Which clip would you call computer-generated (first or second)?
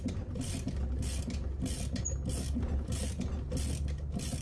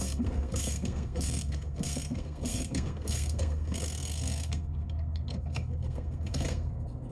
second